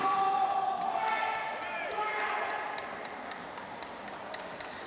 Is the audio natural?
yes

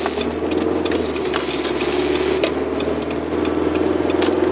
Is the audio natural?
yes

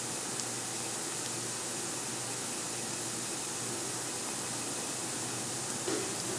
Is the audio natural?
yes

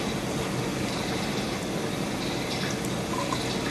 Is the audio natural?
yes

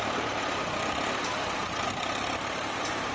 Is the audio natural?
yes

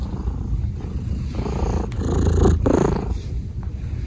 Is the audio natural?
yes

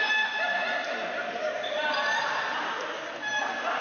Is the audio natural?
yes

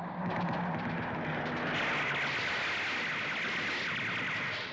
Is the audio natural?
yes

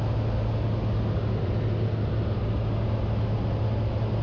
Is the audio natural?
yes